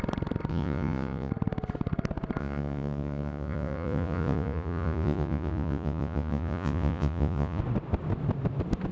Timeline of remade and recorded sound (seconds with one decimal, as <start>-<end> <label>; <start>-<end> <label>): 0.0-0.5 recorded; 0.5-1.3 remade; 1.3-2.4 recorded; 2.4-7.6 remade; 7.6-8.9 recorded